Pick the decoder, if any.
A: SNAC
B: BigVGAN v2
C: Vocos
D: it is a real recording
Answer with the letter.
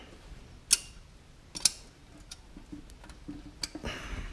D